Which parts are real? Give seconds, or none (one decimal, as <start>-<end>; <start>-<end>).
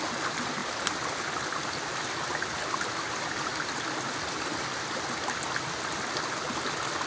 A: 0.0-7.1